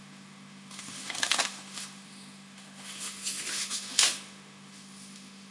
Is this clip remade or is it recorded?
remade